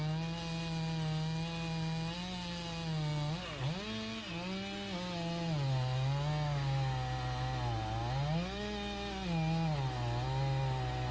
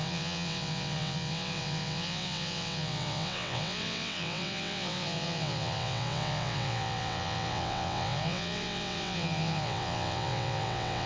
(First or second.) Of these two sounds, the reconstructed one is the second